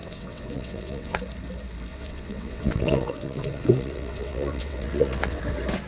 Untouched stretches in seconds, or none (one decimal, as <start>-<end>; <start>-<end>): 1.2-1.9; 5.4-5.9